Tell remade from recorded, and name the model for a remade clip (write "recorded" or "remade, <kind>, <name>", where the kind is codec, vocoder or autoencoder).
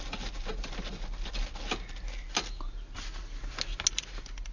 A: recorded